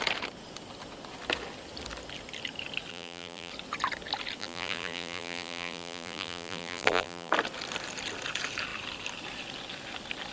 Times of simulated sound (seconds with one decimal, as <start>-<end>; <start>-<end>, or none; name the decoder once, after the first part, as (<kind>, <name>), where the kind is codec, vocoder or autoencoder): 2.9-3.5 (vocoder, BigVGAN v2); 4.4-7.3